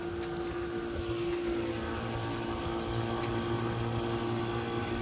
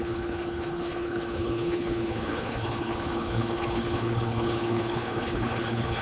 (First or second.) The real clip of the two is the first